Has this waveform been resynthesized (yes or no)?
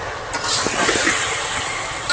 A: no